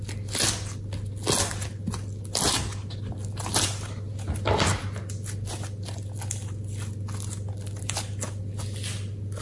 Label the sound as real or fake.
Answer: real